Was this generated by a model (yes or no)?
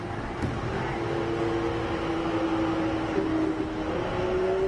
no